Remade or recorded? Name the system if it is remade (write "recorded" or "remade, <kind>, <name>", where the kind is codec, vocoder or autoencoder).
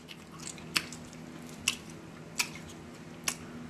recorded